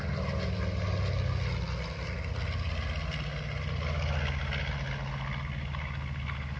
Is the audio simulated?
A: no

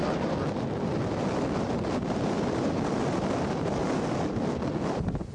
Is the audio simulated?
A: no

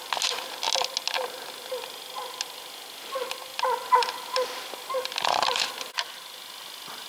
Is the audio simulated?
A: no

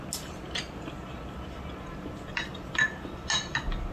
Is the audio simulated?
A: no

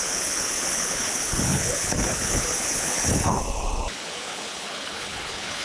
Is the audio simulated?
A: yes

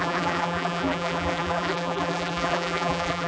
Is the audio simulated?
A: yes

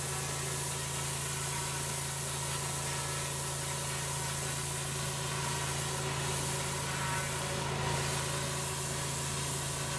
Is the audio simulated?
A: no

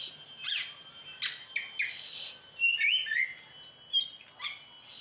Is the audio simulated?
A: no